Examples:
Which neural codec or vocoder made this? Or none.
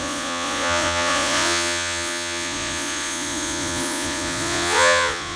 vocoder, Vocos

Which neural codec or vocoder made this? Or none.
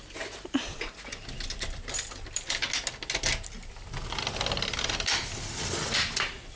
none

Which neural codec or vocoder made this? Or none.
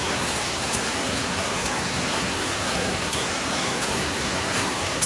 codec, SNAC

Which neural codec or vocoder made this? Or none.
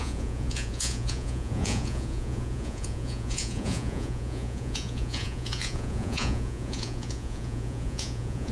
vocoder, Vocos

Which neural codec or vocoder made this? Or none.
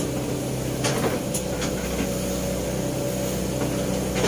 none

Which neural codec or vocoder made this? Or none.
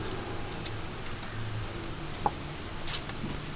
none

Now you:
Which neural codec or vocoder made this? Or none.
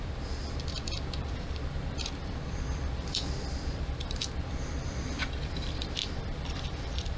vocoder, BigVGAN v2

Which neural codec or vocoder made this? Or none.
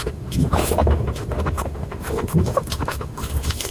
autoencoder, DAC-VAE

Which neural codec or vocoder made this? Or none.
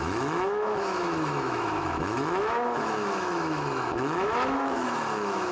autoencoder, DAC-VAE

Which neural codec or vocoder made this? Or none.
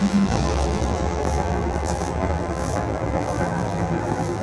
vocoder, BigVGAN v2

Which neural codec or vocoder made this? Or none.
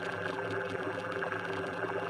vocoder, BigVGAN v2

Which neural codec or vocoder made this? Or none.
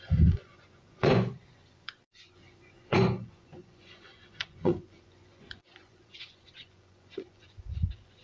vocoder, Vocos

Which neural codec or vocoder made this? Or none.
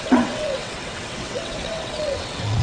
vocoder, WaveNeXt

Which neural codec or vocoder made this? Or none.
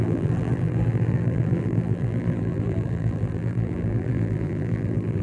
vocoder, BigVGAN v2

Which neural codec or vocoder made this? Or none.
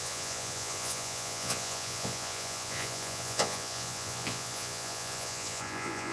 vocoder, Vocos